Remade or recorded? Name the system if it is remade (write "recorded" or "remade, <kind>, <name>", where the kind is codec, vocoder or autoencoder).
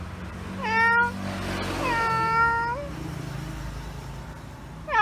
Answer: recorded